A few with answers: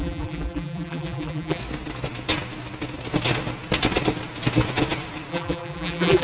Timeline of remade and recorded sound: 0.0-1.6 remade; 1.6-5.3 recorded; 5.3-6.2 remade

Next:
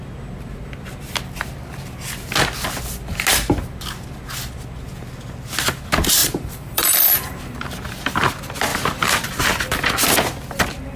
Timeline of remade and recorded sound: 0.0-6.2 recorded; 6.2-7.4 remade; 7.4-8.7 recorded; 8.7-9.4 remade; 9.4-11.0 recorded

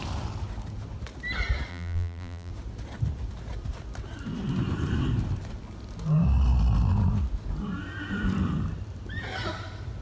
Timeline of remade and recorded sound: 0.0-1.7 recorded; 1.7-2.5 remade; 2.5-10.0 recorded

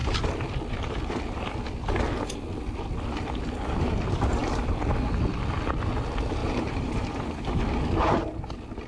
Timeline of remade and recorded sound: 0.0-6.4 recorded; 6.4-7.6 remade; 7.6-8.9 recorded

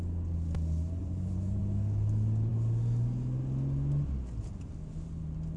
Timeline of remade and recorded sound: 0.0-1.0 recorded; 1.0-1.6 remade; 1.6-5.6 recorded

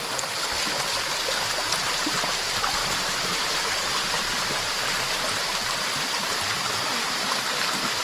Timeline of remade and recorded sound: 0.0-2.8 recorded; 2.8-4.6 remade; 4.6-8.0 recorded

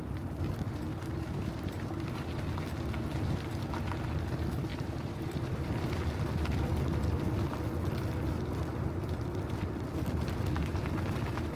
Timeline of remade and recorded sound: 0.0-0.5 remade; 0.5-0.9 recorded; 0.9-2.3 remade; 2.3-4.7 recorded; 4.7-6.0 remade; 6.0-11.6 recorded

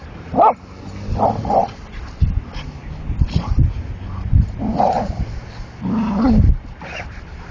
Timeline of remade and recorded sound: 0.0-7.5 recorded